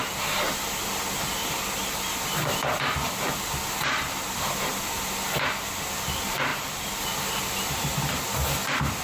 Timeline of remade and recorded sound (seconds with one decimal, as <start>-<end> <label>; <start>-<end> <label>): 0.0-1.4 recorded; 1.4-2.3 remade; 2.3-6.5 recorded; 6.5-7.0 remade; 7.0-9.0 recorded